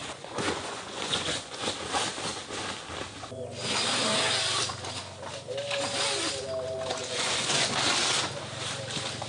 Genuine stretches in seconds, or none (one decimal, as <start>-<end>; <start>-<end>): 1.7-7.0; 7.7-9.3